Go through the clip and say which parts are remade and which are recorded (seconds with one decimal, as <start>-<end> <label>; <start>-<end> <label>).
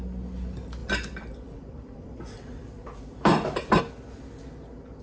0.0-0.8 recorded; 0.8-3.8 remade; 3.8-5.0 recorded